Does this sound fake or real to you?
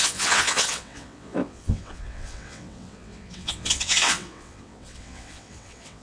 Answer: fake